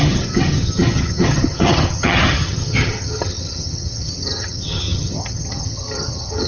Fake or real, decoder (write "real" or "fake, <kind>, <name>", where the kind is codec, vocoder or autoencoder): fake, vocoder, HiFi-GAN